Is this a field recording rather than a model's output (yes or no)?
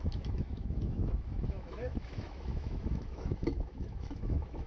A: no